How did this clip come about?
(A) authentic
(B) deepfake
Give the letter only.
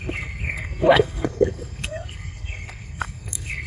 B